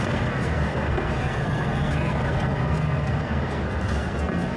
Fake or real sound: fake